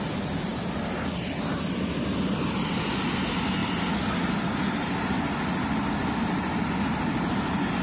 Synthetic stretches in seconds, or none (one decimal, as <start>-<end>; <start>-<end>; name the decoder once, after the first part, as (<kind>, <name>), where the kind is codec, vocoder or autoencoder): none